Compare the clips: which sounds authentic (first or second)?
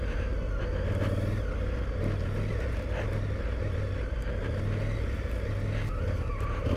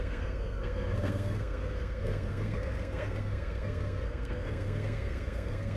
first